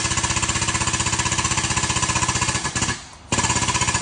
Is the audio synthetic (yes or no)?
no